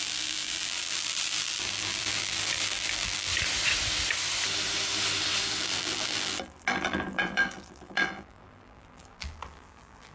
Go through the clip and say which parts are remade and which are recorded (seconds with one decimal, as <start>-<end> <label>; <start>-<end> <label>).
0.0-3.3 remade; 3.3-5.6 recorded; 5.6-10.1 remade